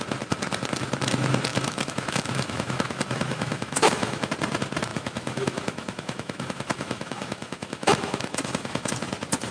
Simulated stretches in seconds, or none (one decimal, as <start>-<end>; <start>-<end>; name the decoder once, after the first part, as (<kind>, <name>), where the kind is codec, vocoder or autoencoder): 1.5-4.3 (autoencoder, DAC-VAE); 4.9-8.9